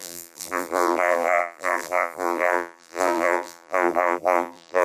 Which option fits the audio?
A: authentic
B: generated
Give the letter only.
B